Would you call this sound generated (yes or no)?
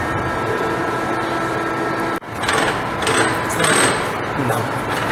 no